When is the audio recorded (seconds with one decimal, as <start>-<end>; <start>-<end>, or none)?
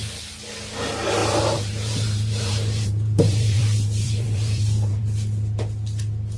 0.0-1.2; 5.0-6.4